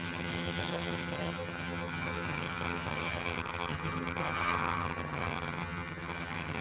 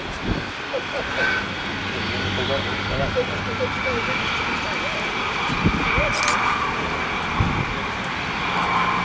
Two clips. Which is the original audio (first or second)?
second